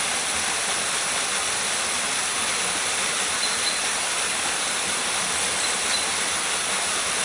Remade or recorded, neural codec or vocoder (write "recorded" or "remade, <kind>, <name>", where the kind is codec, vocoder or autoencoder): recorded